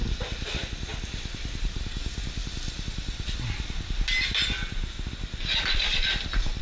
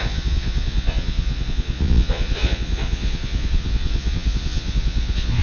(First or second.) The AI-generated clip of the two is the second